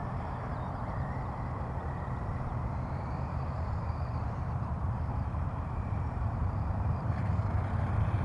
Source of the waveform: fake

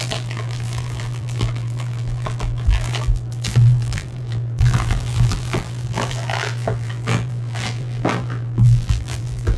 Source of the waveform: fake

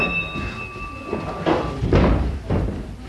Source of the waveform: real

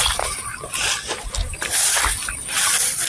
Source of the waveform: fake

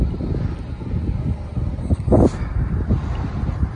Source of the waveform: real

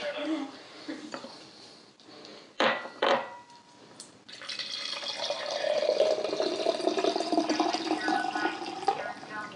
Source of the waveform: fake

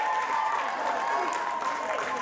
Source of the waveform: fake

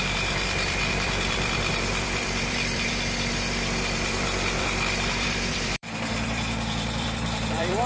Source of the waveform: fake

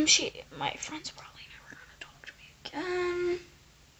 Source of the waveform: real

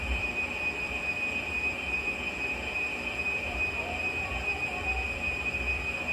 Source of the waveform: fake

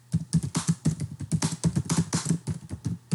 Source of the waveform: real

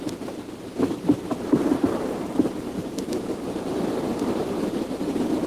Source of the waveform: fake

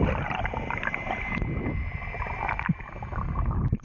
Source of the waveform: fake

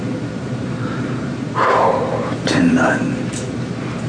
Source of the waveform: fake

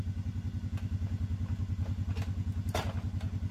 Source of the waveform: real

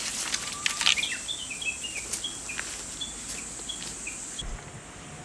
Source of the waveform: real